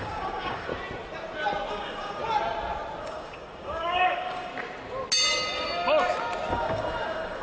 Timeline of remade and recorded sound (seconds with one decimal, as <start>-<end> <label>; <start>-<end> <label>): 0.0-0.7 remade; 0.7-1.7 recorded; 1.7-2.2 remade; 2.2-3.0 recorded; 3.0-4.5 remade; 4.5-6.5 recorded; 6.5-7.4 remade